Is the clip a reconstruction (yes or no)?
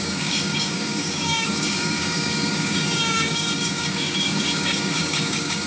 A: yes